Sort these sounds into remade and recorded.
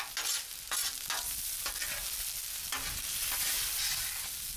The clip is recorded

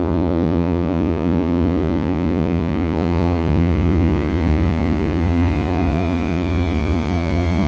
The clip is remade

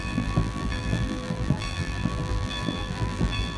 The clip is remade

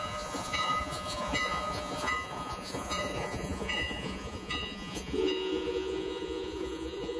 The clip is remade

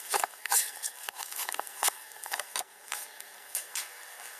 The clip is remade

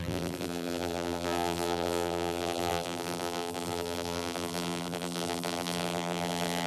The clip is remade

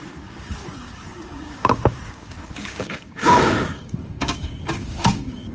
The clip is remade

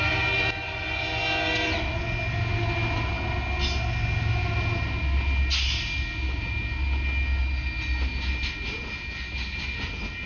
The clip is recorded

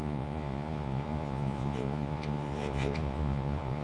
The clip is remade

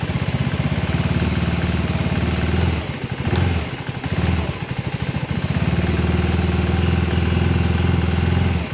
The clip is recorded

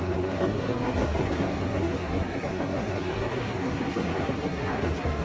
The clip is remade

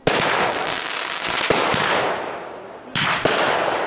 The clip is recorded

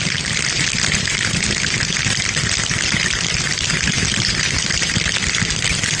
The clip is recorded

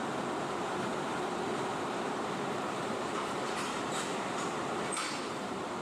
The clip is remade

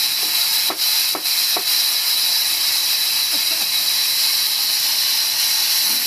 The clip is recorded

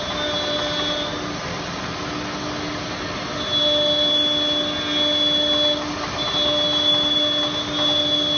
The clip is recorded